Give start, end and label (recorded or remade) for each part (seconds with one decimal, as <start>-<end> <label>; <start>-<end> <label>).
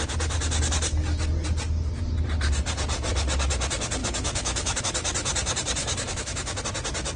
0.0-4.0 recorded; 4.0-4.8 remade; 4.8-5.8 recorded; 5.8-6.6 remade; 6.6-7.2 recorded